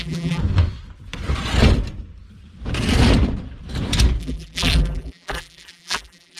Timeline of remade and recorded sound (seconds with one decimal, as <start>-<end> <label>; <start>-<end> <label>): 0.0-0.4 remade; 0.4-4.2 recorded; 4.2-6.4 remade